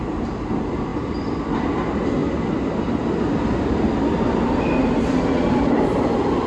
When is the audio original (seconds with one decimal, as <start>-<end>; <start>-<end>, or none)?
0.0-6.5